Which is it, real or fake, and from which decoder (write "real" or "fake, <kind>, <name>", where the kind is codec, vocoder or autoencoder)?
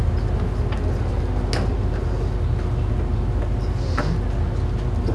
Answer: real